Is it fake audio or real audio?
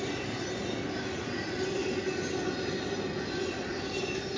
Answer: real